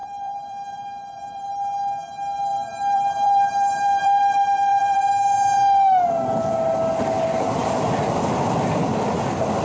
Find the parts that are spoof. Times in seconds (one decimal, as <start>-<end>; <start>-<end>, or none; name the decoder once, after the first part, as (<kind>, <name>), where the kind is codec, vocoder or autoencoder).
0.0-1.5 (vocoder, BigVGAN v2); 2.5-4.2